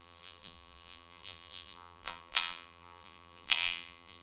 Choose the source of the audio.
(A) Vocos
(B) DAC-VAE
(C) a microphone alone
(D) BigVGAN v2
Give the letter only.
D